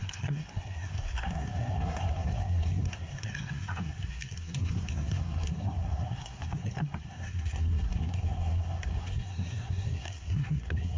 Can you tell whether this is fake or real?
fake